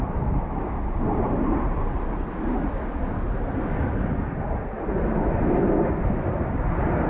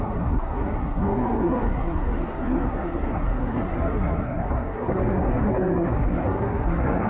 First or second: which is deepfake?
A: second